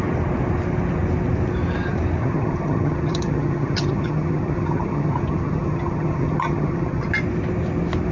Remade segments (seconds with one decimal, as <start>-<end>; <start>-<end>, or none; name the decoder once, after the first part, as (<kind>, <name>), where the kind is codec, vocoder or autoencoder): 2.2-7.1 (vocoder, HiFi-GAN)